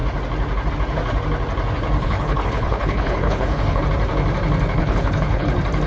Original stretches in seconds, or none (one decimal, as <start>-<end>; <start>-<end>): 0.0-2.0; 3.8-4.8; 5.5-5.9